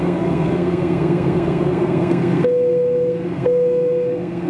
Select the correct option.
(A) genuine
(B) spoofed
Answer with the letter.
B